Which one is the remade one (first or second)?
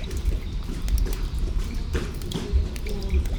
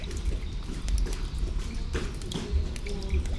first